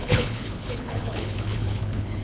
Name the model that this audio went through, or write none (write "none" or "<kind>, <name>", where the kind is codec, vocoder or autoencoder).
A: codec, HILCodec